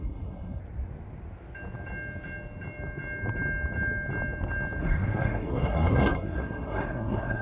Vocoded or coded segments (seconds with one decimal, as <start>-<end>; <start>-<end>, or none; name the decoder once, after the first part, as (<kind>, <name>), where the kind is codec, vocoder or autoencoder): 0.0-0.6 (codec, SNAC); 4.8-7.4